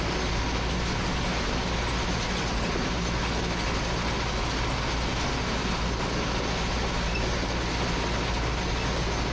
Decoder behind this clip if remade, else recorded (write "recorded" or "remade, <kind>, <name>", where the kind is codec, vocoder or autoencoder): recorded